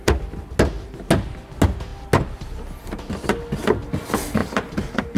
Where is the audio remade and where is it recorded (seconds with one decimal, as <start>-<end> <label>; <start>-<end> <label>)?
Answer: 0.0-5.2 recorded